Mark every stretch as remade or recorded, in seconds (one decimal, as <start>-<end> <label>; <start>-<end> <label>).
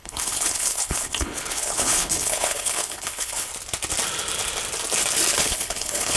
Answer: 0.0-3.5 remade; 3.5-5.4 recorded; 5.4-6.2 remade